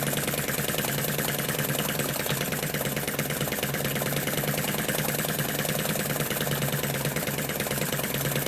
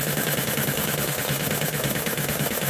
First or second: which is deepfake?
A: second